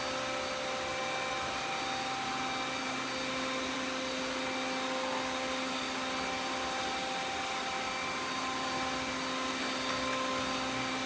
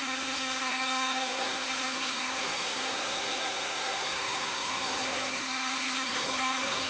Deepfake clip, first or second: second